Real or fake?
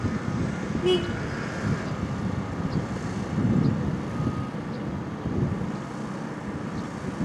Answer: real